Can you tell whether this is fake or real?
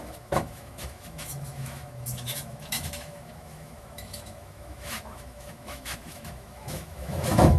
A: fake